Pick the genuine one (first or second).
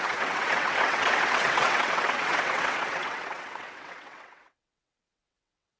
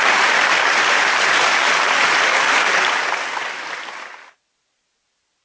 second